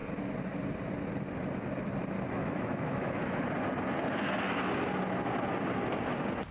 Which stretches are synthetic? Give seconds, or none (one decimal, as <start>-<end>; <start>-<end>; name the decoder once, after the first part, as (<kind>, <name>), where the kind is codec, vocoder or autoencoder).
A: 2.4-3.4 (autoencoder, DAC-VAE)